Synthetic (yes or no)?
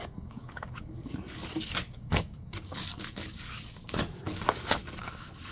yes